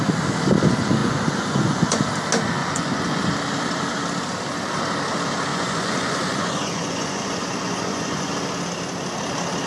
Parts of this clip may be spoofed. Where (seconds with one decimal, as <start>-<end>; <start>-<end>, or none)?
1.0-2.0; 2.6-3.2; 5.5-8.3